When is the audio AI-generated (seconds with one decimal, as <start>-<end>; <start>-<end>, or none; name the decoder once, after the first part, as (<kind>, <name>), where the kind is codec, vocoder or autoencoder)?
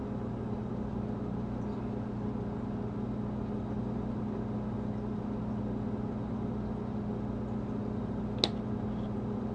0.0-0.7 (vocoder, BigVGAN v2)